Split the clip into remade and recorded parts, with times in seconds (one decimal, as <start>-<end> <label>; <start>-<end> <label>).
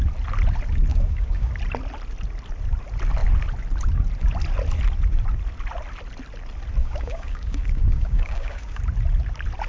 0.0-0.9 recorded; 0.9-1.5 remade; 1.5-6.8 recorded; 6.8-8.8 remade; 8.8-9.7 recorded